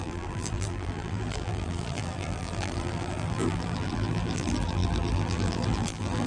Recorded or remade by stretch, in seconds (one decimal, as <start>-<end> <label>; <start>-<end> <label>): 0.0-6.3 remade